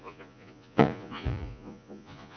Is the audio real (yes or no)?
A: no